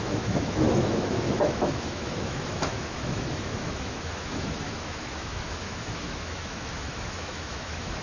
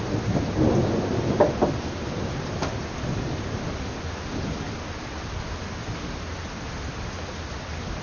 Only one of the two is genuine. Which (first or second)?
second